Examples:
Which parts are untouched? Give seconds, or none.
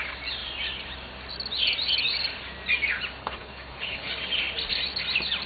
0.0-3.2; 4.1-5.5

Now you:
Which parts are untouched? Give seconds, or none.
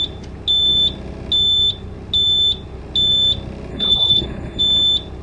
0.0-3.7; 4.6-5.2